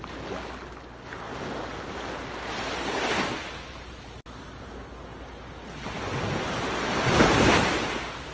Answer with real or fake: real